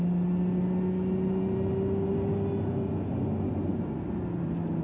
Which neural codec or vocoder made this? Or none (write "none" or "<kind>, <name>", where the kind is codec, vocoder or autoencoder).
none